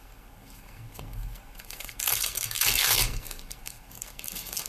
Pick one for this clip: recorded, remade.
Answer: remade